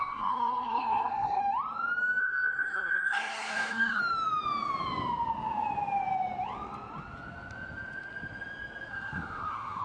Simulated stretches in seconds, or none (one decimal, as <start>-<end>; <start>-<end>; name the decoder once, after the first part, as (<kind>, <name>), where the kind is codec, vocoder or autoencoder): 0.0-1.4 (codec, SNAC); 2.2-4.0; 8.9-9.8